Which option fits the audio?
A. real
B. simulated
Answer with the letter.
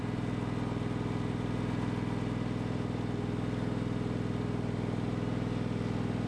A